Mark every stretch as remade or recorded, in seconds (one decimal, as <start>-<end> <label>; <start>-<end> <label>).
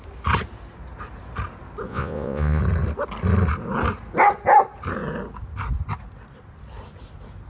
0.0-1.9 recorded; 1.9-2.6 remade; 2.6-7.5 recorded